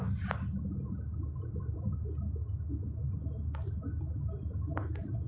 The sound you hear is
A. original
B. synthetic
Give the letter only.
A